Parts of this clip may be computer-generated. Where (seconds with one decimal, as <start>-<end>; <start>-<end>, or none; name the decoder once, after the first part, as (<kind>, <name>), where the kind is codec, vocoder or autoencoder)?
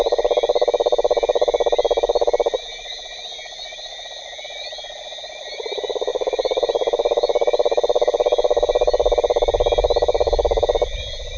none